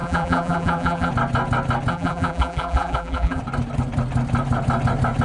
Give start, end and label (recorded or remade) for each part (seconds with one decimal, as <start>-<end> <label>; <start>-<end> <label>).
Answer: 0.0-1.1 remade; 1.1-1.9 recorded; 1.9-3.4 remade; 3.4-5.2 recorded